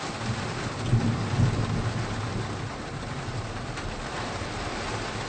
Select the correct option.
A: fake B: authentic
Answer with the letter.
B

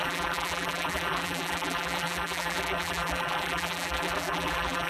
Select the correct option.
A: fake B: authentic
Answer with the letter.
A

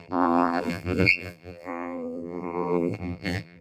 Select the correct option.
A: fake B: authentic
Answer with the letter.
A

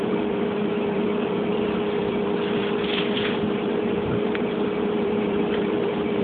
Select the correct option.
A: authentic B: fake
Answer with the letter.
B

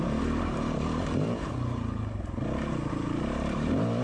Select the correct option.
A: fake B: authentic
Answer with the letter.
A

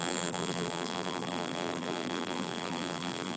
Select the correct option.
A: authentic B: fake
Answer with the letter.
B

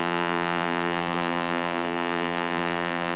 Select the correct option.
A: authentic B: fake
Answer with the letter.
B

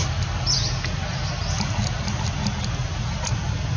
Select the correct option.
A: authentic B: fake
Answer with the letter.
A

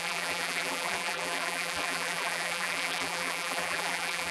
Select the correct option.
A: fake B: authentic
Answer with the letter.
A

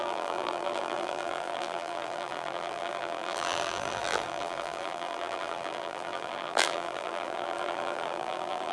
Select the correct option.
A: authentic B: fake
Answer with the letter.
B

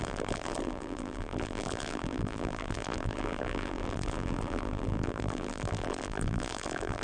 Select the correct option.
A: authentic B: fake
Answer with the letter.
B